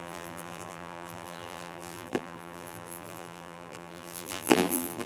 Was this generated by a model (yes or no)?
yes